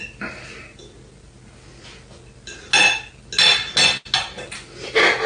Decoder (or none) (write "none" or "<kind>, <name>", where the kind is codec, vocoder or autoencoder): none